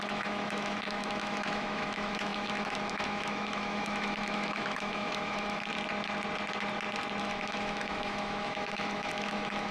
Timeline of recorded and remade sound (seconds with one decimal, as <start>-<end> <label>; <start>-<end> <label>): 0.0-5.7 remade; 5.7-7.2 recorded; 7.2-9.7 remade